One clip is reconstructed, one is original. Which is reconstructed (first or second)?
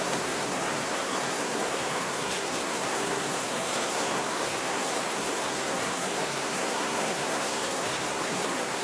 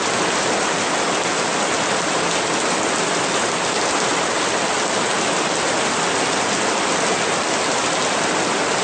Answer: first